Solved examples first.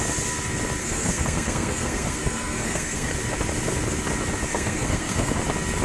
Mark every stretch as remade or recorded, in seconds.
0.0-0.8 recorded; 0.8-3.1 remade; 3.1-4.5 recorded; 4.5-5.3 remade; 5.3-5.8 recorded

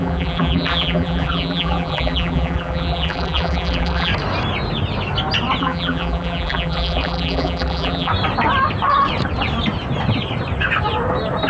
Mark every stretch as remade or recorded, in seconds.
0.0-4.1 remade; 4.1-5.6 recorded; 5.6-8.1 remade; 8.1-11.5 recorded